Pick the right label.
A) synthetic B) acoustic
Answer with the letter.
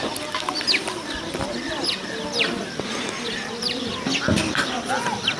B